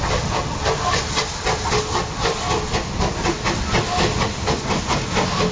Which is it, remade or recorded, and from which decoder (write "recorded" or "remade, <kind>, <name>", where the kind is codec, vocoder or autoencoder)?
recorded